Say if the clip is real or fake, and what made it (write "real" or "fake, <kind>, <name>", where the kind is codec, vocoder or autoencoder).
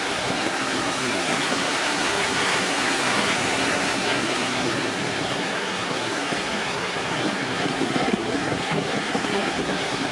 fake, codec, SNAC